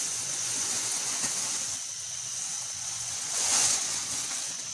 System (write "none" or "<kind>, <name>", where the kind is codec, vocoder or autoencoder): vocoder, Vocos